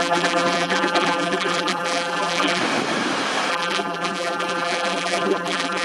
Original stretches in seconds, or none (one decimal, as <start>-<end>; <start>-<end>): 2.6-3.5